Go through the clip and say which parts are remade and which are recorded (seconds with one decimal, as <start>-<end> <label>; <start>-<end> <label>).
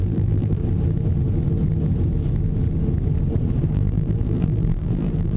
0.0-0.6 remade; 0.6-3.7 recorded; 3.7-5.4 remade